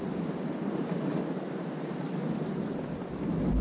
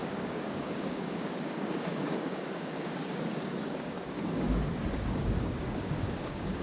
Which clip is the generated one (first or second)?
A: second